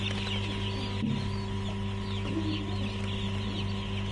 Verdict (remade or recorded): recorded